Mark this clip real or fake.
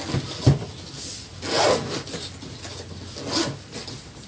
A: real